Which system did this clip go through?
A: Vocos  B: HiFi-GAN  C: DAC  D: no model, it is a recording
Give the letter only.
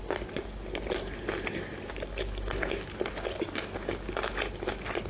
D